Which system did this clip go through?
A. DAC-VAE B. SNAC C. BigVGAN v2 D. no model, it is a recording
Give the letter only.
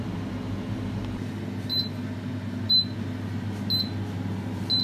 D